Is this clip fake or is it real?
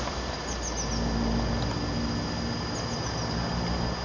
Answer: real